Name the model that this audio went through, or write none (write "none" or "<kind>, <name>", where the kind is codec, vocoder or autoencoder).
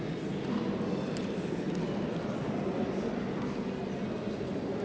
none